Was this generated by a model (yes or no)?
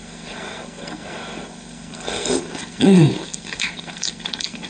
yes